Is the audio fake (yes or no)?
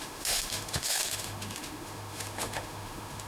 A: yes